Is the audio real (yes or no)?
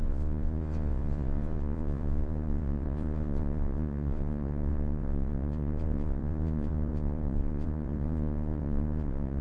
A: no